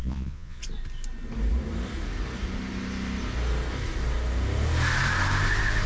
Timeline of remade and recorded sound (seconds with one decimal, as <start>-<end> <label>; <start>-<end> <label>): 0.0-0.6 remade; 0.6-5.9 recorded